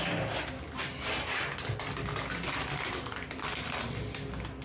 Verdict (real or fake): real